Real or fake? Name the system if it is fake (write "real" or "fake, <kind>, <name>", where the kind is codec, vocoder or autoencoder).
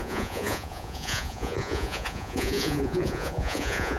fake, vocoder, Vocos